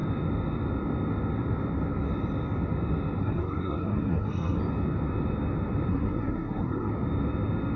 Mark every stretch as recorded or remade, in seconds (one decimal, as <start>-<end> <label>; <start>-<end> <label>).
0.0-3.2 recorded; 3.2-4.6 remade; 4.6-5.9 recorded; 5.9-6.9 remade; 6.9-7.8 recorded